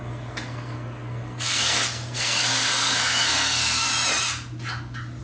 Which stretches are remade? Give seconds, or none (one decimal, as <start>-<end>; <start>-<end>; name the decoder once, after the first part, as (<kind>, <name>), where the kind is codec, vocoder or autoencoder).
0.0-3.9 (codec, SNAC)